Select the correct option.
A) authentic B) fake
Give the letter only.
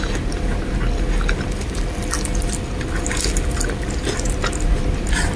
A